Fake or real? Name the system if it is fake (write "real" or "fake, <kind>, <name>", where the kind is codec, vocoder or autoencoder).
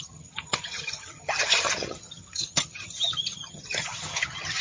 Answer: fake, vocoder, HiFi-GAN